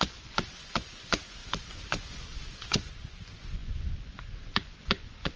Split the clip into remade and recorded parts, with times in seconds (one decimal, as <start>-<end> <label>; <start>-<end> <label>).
0.0-5.4 remade

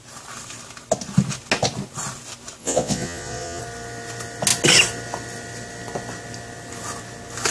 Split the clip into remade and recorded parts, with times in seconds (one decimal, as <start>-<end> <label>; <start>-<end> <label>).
0.0-2.6 recorded; 2.6-3.6 remade; 3.6-7.5 recorded

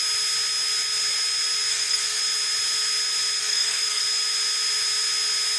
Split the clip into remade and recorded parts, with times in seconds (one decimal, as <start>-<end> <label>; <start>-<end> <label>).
0.0-1.7 recorded; 1.7-2.2 remade; 2.2-3.4 recorded; 3.4-4.0 remade; 4.0-5.6 recorded

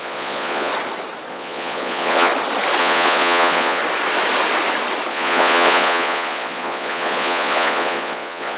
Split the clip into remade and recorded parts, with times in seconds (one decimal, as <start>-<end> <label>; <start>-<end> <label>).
0.0-0.7 remade; 0.7-1.3 recorded; 1.3-2.3 remade; 2.3-2.8 recorded; 2.8-3.8 remade; 3.8-5.1 recorded; 5.1-8.6 remade